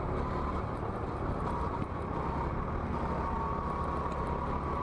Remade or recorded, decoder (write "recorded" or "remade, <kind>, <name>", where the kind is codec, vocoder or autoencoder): recorded